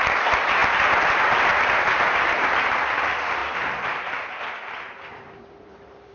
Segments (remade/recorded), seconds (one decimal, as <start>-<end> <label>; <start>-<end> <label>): 0.0-3.4 recorded; 3.4-6.1 remade